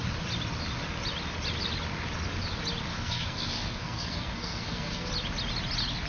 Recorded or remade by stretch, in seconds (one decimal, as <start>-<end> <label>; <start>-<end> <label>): 0.0-2.9 recorded; 2.9-5.1 remade; 5.1-6.1 recorded